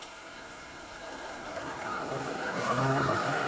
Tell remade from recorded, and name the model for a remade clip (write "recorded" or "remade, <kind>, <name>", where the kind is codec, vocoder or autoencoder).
remade, codec, SNAC